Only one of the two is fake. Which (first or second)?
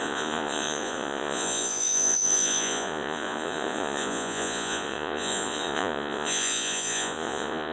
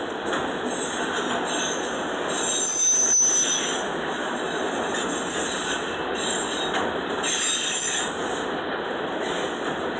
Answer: first